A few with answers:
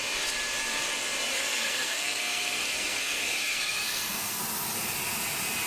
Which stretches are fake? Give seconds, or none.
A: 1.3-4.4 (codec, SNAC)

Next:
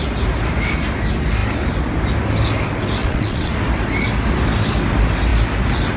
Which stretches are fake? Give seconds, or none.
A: 3.0-3.5 (vocoder, WaveNeXt)

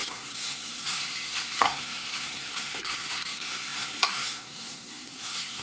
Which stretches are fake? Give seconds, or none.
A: 0.0-5.6 (codec, SNAC)

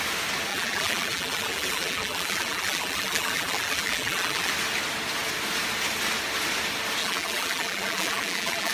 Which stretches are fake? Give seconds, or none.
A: 0.5-4.5 (vocoder, BigVGAN v2); 7.0-8.7

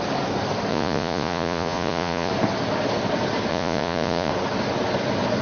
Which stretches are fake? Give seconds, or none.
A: 0.7-2.3 (vocoder, Vocos); 3.5-4.3

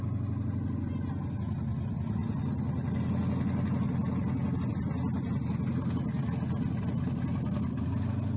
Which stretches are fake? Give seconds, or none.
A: none